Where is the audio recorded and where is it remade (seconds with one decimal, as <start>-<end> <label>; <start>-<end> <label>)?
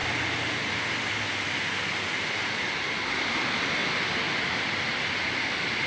0.0-5.9 recorded